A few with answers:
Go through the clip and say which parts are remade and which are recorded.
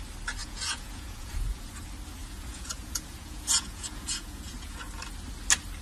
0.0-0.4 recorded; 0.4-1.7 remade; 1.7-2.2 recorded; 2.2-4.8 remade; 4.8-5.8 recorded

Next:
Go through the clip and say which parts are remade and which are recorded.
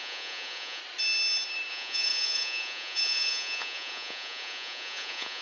0.0-0.8 remade; 0.8-1.7 recorded; 1.7-5.4 remade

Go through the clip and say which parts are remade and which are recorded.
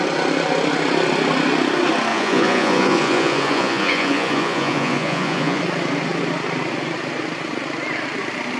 0.0-2.1 recorded; 2.1-5.6 remade; 5.6-8.6 recorded